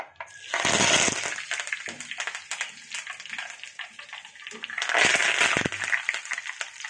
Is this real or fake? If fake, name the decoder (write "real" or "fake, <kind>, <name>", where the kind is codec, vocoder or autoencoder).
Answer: real